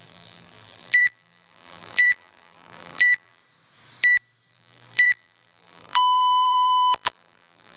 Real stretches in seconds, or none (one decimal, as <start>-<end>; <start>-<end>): 3.4-4.5